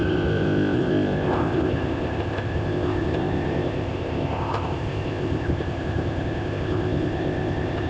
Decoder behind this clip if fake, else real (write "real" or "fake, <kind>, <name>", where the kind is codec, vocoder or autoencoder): fake, codec, ZipCodec